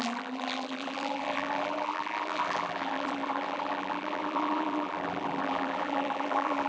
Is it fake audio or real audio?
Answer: fake